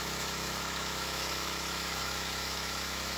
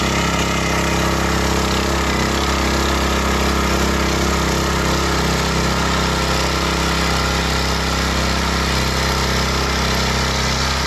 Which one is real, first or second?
second